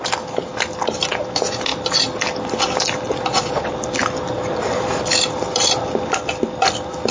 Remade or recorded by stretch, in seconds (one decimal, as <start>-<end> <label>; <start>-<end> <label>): 0.0-3.1 recorded; 3.1-3.7 remade; 3.7-7.1 recorded